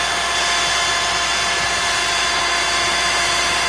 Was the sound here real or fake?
real